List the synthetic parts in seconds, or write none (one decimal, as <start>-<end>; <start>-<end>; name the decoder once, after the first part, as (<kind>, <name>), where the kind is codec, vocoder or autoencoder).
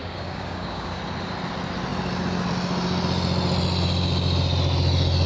0.0-1.0 (codec, DAC)